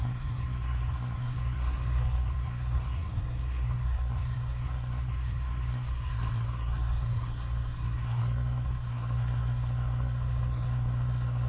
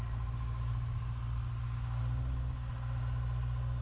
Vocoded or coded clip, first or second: first